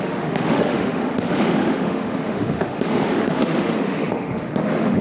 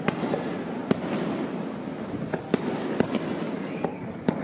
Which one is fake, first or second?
first